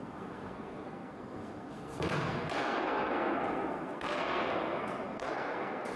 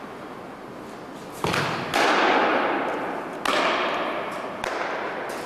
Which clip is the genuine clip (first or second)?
second